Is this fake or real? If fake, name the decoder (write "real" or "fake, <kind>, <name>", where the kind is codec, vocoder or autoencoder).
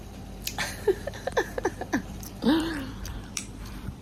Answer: fake, vocoder, BigVGAN v2